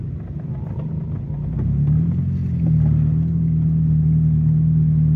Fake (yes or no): no